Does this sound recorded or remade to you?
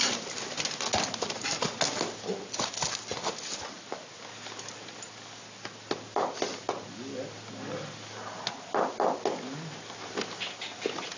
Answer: recorded